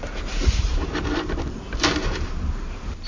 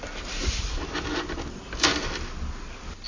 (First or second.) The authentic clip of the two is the second